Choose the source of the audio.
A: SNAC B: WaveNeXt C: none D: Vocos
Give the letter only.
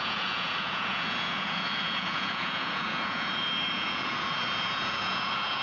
D